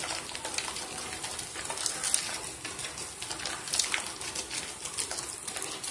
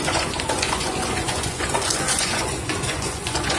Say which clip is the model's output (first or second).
second